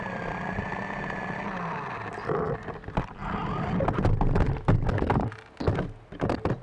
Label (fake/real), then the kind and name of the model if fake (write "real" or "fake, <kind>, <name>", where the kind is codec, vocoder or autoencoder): real